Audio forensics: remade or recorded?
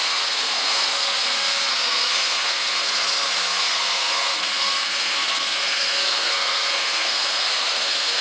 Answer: remade